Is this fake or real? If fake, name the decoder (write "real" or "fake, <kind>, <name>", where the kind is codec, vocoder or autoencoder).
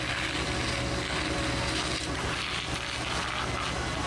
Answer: real